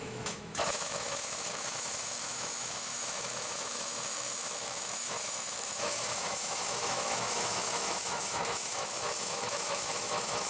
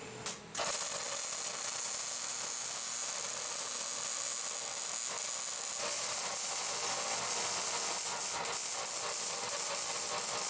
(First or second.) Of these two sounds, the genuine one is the second